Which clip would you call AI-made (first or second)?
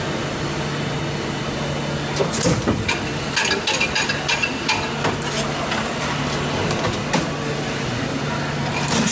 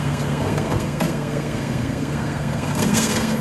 second